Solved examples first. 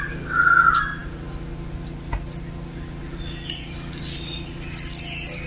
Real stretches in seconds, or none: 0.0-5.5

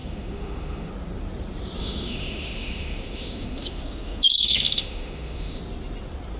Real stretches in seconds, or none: 0.9-1.8; 5.6-6.4

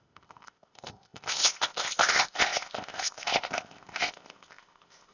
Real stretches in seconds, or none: none

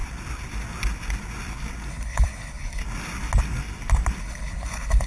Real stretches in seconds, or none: 0.0-1.9; 2.8-4.2

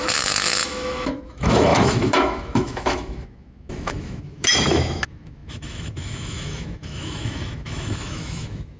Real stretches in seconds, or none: none